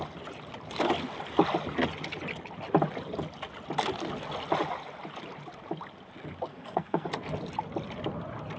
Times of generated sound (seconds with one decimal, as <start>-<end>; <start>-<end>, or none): 6.5-7.1